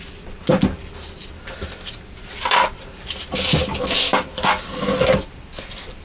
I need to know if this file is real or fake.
real